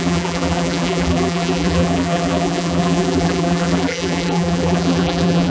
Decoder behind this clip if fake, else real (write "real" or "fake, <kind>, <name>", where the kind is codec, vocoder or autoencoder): fake, vocoder, BigVGAN v2